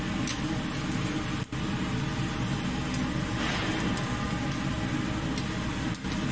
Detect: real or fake real